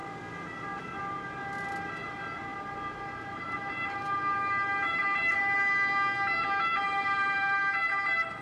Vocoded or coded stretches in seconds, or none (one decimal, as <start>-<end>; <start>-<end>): none